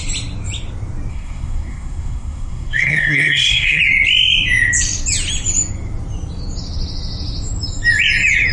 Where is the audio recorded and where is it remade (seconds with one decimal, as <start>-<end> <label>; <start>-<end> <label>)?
0.0-1.1 recorded; 1.1-3.8 remade; 3.8-8.5 recorded